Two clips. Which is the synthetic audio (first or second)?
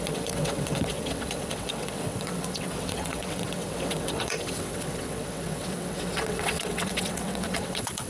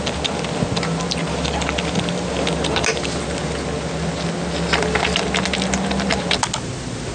first